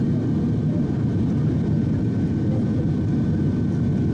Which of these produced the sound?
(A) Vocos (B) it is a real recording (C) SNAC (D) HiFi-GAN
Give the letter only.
B